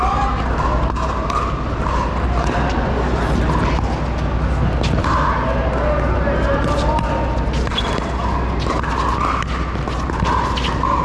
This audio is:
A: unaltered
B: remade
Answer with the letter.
A